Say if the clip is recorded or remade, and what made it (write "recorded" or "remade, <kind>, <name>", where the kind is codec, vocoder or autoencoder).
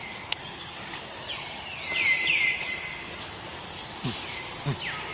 recorded